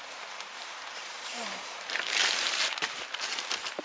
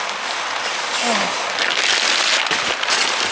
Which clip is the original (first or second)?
second